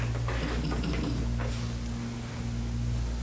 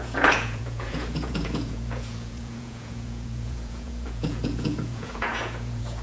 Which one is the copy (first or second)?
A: second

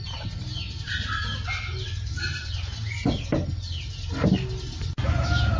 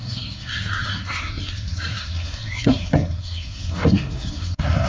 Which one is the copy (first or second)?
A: second